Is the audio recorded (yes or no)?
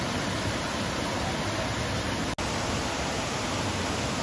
yes